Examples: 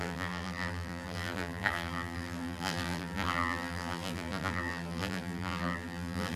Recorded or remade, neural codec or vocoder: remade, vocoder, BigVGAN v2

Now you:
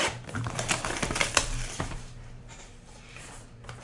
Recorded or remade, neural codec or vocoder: remade, vocoder, BigVGAN v2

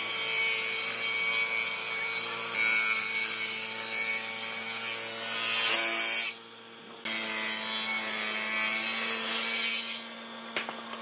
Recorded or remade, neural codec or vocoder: recorded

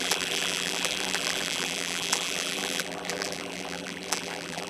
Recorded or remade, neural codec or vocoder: remade, vocoder, BigVGAN v2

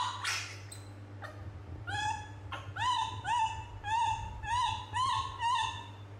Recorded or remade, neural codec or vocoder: recorded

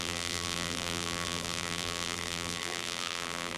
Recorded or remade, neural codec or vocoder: remade, vocoder, BigVGAN v2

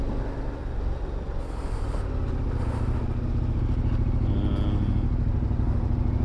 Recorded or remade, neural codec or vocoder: recorded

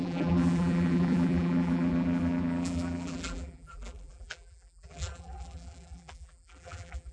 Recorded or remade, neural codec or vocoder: remade, vocoder, BigVGAN v2